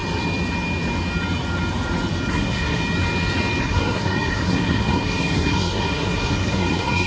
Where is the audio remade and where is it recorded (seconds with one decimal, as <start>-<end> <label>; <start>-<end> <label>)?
0.0-2.3 recorded; 2.3-2.8 remade; 2.8-3.6 recorded; 3.6-7.1 remade

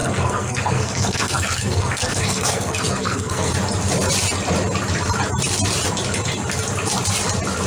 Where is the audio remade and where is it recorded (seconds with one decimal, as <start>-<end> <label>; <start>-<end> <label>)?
0.0-3.5 remade; 3.5-7.7 recorded

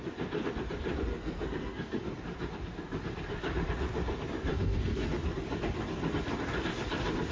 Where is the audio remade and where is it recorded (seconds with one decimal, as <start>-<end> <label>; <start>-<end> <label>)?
0.0-1.1 recorded; 1.1-2.2 remade; 2.2-4.5 recorded; 4.5-5.1 remade; 5.1-7.3 recorded

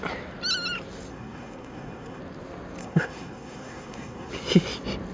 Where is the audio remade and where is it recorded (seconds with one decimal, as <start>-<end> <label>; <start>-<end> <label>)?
0.0-1.1 recorded; 1.1-2.2 remade; 2.2-2.8 recorded; 2.8-4.3 remade; 4.3-5.1 recorded

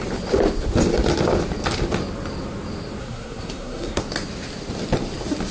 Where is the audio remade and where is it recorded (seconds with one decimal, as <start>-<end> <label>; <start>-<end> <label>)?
0.0-3.0 recorded; 3.0-4.0 remade; 4.0-5.5 recorded

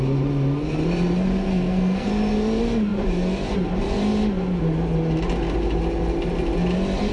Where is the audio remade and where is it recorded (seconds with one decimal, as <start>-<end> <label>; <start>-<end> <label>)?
0.0-1.5 recorded; 1.5-2.1 remade; 2.1-7.1 recorded

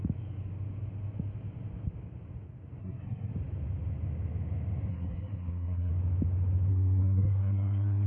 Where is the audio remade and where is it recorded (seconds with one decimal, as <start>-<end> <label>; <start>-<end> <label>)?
0.0-2.8 recorded; 2.8-3.3 remade; 3.3-4.9 recorded; 4.9-5.9 remade; 5.9-6.7 recorded; 6.7-8.1 remade